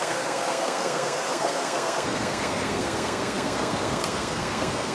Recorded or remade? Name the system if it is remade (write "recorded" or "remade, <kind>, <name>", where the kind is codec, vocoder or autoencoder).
remade, codec, SNAC